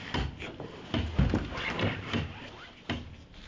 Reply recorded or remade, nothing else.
recorded